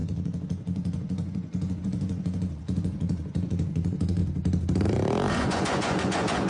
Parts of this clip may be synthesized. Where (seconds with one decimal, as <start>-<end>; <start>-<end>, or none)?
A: 0.0-4.2; 5.3-6.5